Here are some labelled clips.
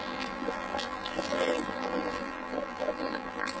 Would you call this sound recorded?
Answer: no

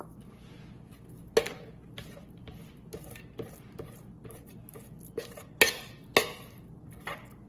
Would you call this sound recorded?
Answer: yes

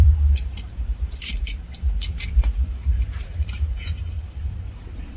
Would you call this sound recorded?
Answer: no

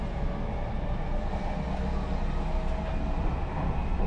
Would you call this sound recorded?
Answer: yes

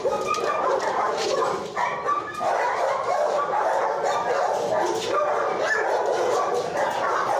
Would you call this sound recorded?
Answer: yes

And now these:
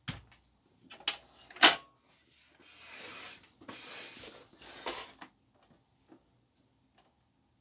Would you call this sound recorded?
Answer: yes